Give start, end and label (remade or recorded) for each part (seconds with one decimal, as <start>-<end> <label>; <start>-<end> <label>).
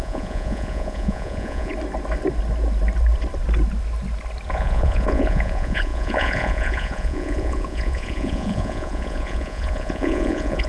0.0-1.7 remade; 1.7-4.5 recorded; 4.5-10.7 remade